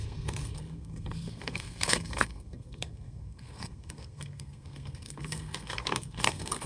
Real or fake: fake